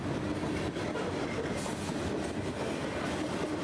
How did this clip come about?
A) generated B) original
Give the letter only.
B